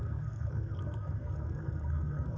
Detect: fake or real fake